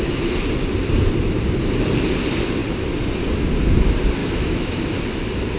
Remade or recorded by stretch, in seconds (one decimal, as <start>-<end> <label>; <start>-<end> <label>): 0.0-4.2 recorded; 4.2-4.8 remade; 4.8-5.6 recorded